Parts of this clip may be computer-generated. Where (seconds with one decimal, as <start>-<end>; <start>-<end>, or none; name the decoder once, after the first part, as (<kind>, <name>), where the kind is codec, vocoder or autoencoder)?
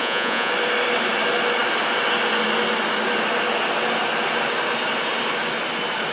0.0-0.5 (vocoder, Vocos)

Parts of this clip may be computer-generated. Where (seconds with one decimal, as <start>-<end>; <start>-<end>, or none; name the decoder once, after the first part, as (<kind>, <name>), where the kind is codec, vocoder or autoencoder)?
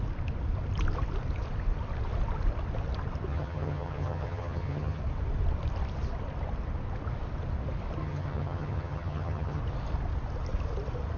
3.3-5.0 (vocoder, HiFi-GAN); 8.0-9.6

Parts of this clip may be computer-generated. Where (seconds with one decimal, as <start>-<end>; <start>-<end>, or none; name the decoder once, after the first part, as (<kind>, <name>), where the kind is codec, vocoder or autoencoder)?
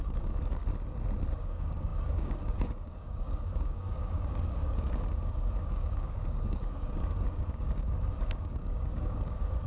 0.0-0.6 (codec, DAC); 1.4-9.7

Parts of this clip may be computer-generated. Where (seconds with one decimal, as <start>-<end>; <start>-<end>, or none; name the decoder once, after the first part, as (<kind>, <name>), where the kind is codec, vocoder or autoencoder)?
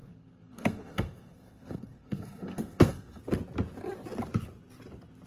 0.0-3.2 (codec, SNAC)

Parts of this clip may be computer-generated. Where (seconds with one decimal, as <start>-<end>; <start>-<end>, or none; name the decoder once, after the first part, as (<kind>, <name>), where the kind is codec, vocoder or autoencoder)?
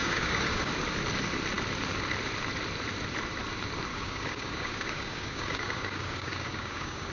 0.0-0.7 (codec, DAC); 3.9-7.1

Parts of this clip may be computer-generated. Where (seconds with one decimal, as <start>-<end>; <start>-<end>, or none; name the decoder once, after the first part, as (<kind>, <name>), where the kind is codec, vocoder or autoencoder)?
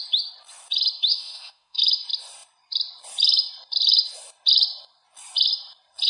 1.1-1.8 (autoencoder, DAC-VAE)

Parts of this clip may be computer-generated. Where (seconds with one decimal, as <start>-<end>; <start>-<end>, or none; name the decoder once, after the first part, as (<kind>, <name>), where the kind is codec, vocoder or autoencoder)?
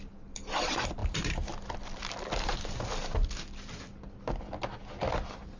none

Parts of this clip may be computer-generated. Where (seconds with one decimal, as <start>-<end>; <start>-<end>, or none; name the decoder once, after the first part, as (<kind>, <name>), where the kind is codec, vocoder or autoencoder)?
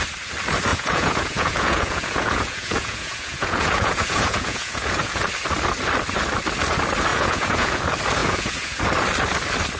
0.7-5.3 (vocoder, Vocos); 7.1-7.8; 8.2-8.8